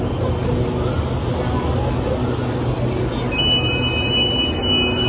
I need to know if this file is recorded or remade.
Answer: recorded